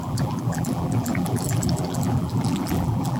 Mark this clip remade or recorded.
remade